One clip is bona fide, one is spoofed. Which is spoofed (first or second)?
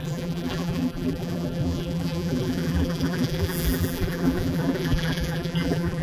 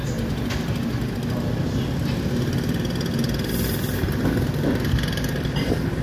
first